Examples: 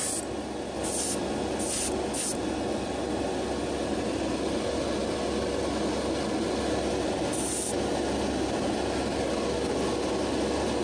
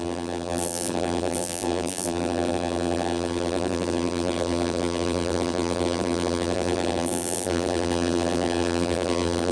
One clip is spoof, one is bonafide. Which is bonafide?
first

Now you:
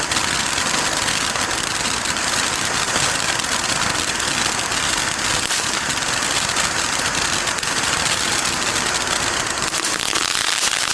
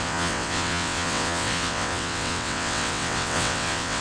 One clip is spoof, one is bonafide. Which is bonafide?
first